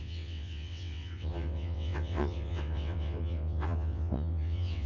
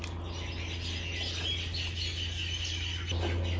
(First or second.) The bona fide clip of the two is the second